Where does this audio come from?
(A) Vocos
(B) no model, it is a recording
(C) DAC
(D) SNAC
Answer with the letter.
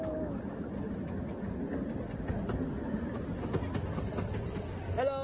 B